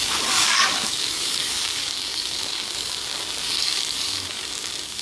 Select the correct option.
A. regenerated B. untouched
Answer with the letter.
A